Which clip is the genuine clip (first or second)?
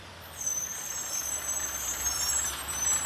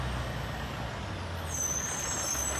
second